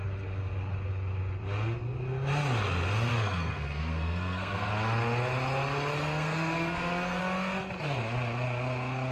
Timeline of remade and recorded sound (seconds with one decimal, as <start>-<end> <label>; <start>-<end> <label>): 0.0-3.1 recorded; 3.1-4.7 remade; 4.7-6.0 recorded; 6.0-7.2 remade; 7.2-9.1 recorded